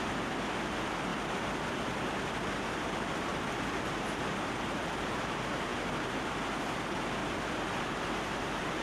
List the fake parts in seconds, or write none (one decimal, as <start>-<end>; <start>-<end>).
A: 0.0-3.3; 4.1-5.7; 6.6-8.8